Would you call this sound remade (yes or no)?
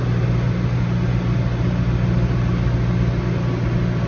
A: no